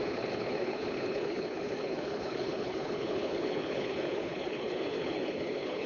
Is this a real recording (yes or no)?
no